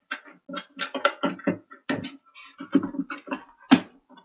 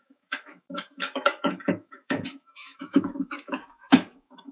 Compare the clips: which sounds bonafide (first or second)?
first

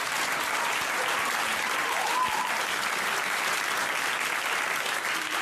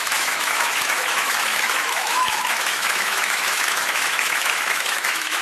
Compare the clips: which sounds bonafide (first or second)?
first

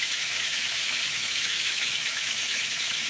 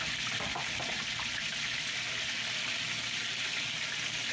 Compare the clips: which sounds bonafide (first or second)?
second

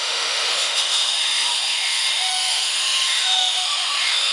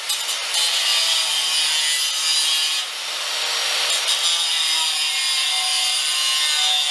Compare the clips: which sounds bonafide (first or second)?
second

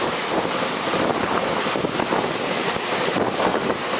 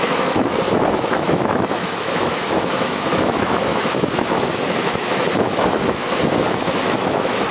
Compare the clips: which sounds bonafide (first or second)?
first